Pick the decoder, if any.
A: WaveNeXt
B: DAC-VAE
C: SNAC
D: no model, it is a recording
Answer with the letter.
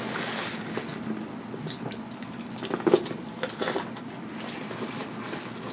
D